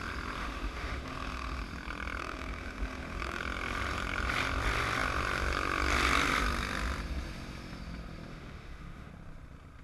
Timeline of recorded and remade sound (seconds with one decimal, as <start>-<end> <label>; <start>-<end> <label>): 0.0-0.4 recorded; 0.4-1.6 remade; 1.6-2.2 recorded; 2.2-3.4 remade; 3.4-8.3 recorded; 8.3-9.1 remade; 9.1-9.8 recorded